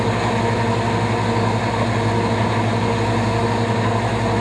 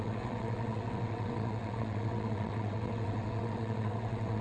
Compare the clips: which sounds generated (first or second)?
second